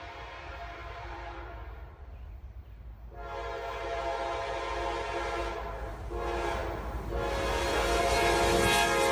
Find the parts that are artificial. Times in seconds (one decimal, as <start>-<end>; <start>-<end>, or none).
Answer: 0.8-2.6